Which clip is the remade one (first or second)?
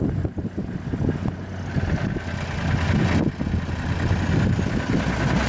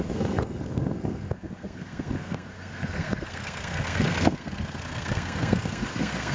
second